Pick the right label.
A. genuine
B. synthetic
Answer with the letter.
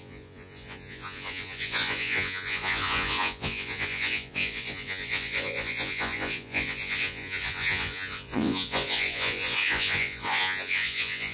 B